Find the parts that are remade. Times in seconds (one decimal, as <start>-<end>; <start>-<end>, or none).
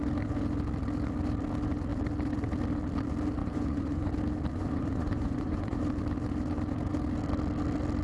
3.4-4.1; 4.5-5.8